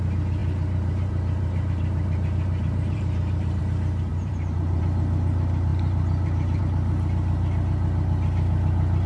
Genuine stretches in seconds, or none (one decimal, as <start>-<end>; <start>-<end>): 0.0-0.4; 3.6-4.1; 4.8-5.7; 6.6-9.1